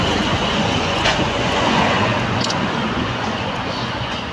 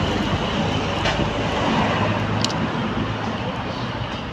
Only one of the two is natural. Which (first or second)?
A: second